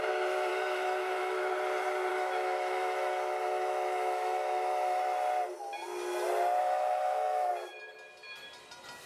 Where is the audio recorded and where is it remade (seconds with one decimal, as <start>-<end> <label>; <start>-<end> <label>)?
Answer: 0.0-0.5 recorded; 0.5-1.5 remade; 1.5-2.1 recorded; 2.1-5.0 remade; 5.0-6.6 recorded; 6.6-7.5 remade; 7.5-9.1 recorded